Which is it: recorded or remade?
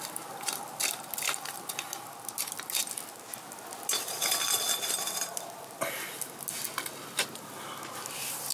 recorded